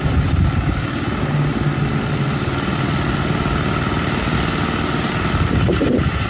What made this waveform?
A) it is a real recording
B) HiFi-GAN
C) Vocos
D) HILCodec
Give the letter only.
A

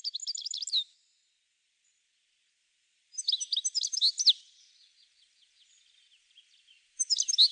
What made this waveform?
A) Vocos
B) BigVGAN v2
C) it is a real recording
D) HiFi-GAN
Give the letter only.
C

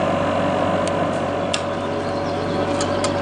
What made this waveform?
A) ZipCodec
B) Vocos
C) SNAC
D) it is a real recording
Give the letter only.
D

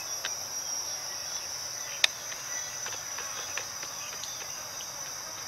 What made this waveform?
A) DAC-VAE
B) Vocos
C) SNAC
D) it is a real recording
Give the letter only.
D